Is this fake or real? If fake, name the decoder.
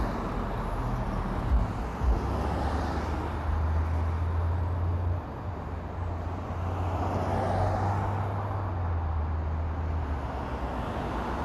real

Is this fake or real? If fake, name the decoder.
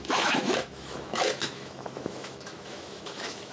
fake, autoencoder, DAC-VAE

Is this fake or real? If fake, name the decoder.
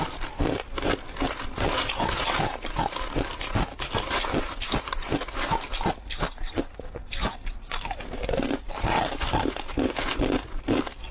real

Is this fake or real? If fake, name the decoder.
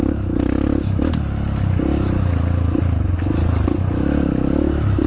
real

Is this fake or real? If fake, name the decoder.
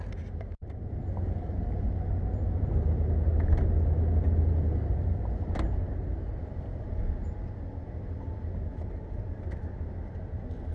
real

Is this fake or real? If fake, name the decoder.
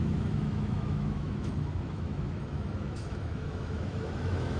fake, autoencoder, DAC-VAE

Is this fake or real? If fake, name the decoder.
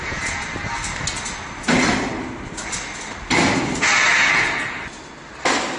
real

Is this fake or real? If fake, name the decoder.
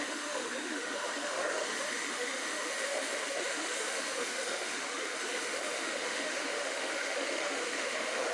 fake, autoencoder, DAC-VAE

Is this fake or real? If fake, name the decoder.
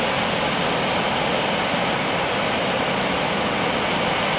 real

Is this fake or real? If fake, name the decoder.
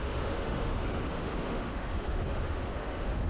fake, autoencoder, DAC-VAE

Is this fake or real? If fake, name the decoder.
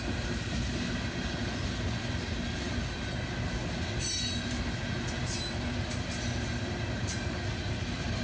real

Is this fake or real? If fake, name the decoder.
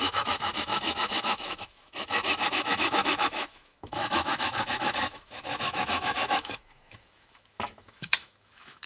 fake, autoencoder, DAC-VAE